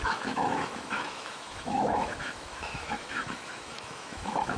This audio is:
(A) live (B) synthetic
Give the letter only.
B